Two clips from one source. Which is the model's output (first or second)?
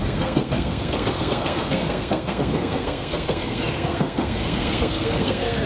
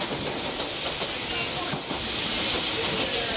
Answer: first